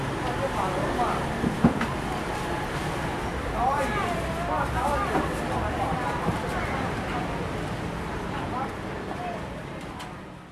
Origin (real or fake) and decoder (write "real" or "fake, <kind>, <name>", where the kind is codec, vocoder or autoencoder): real